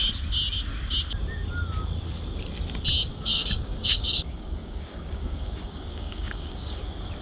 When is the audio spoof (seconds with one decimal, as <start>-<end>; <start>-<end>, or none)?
3.1-6.8